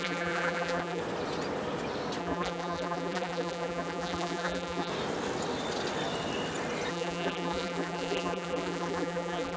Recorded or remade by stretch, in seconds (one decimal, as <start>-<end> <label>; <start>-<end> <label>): 0.0-1.0 remade; 1.0-2.2 recorded; 2.2-4.9 remade; 4.9-6.9 recorded; 6.9-9.6 remade